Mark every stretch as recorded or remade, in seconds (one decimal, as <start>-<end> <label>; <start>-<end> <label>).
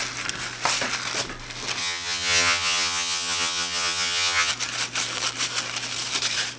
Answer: 0.0-1.8 recorded; 1.8-4.5 remade; 4.5-6.6 recorded